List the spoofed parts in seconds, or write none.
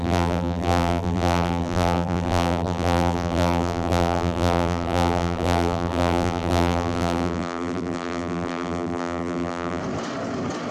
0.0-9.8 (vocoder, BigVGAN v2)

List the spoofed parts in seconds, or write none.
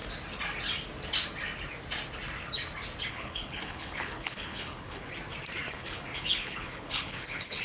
3.1-5.1 (codec, HILCodec); 5.7-7.6